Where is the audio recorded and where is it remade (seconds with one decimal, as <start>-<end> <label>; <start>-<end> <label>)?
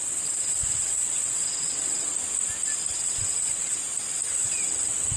0.0-2.1 remade; 2.1-3.0 recorded; 3.0-3.8 remade; 3.8-4.3 recorded; 4.3-5.2 remade